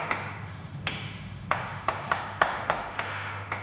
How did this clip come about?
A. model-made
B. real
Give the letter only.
A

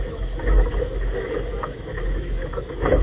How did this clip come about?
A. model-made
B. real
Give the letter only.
A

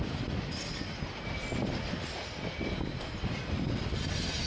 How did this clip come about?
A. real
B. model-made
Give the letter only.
A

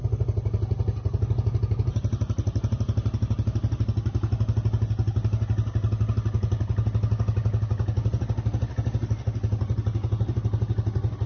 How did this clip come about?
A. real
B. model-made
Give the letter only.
A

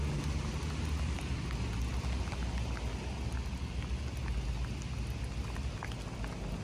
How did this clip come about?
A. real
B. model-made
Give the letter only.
A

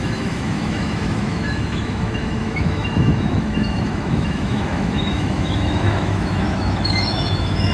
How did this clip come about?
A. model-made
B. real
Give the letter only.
A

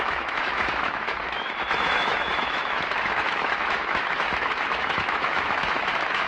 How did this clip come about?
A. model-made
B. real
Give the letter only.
A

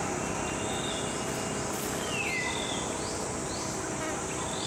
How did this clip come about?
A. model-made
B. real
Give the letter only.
B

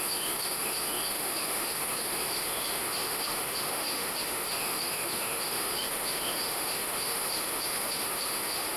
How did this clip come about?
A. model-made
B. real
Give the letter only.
A